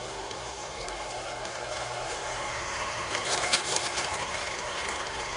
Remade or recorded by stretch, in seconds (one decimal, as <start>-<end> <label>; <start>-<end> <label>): 0.0-5.4 remade